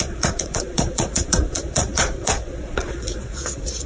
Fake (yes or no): yes